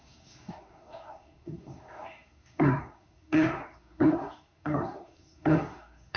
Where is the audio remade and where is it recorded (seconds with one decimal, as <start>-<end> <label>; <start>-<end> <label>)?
0.0-6.2 remade